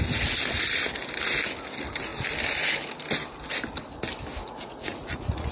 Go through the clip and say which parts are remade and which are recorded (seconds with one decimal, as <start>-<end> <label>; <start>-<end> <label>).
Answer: 0.0-4.4 recorded; 4.4-5.5 remade